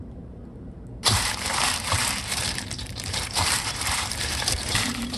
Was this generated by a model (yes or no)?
yes